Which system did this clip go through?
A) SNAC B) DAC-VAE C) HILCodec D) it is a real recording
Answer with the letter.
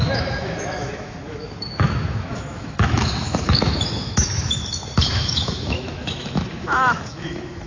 B